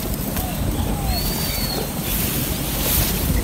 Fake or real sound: real